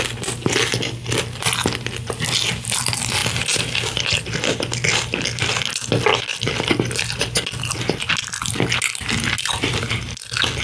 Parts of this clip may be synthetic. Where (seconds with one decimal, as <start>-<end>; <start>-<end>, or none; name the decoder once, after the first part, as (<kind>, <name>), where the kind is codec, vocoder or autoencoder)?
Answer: none